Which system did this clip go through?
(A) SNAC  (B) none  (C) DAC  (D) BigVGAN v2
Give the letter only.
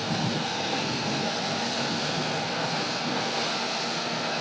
A